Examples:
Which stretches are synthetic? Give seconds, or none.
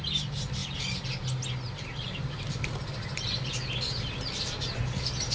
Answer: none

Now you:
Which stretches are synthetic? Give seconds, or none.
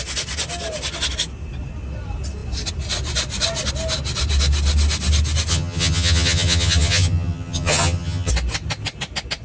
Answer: 5.5-8.3 (vocoder, HiFi-GAN)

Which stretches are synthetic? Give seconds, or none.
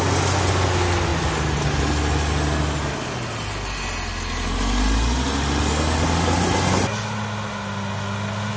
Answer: none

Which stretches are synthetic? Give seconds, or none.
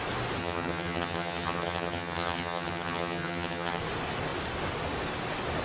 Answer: 0.4-3.8 (vocoder, HiFi-GAN)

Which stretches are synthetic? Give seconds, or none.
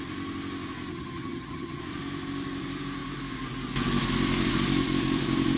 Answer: 0.9-1.8 (vocoder, HiFi-GAN)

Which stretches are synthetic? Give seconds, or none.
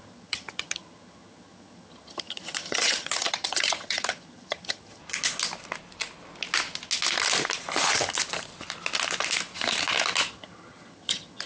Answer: 0.0-5.0 (vocoder, HiFi-GAN); 10.3-11.5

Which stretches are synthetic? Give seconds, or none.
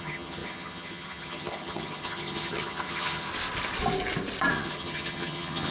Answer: 0.0-3.3 (vocoder, HiFi-GAN); 4.5-5.7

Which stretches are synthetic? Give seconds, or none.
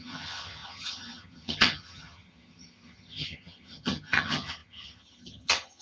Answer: 0.0-5.8 (vocoder, HiFi-GAN)